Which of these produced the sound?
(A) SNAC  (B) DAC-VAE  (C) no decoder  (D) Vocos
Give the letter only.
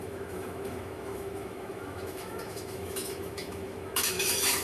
B